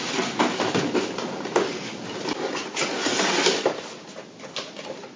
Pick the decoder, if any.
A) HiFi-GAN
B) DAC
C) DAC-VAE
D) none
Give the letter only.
D